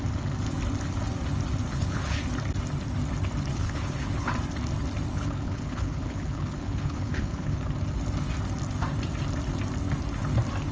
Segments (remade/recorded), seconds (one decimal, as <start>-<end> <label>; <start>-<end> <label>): 0.0-1.7 recorded; 1.7-2.2 remade; 2.2-3.5 recorded; 3.5-4.3 remade; 4.3-5.1 recorded; 5.1-7.6 remade; 7.6-10.7 recorded